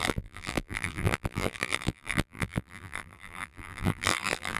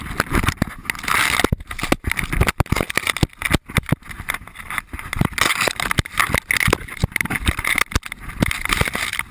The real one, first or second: second